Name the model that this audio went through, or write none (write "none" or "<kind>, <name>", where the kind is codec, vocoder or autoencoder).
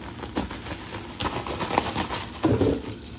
none